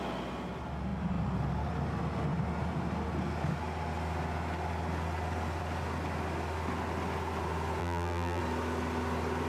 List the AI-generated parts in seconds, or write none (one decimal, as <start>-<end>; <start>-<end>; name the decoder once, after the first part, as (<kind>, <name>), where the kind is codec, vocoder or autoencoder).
7.8-8.4 (vocoder, BigVGAN v2)